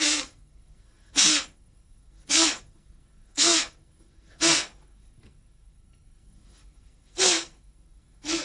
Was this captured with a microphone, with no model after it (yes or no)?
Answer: no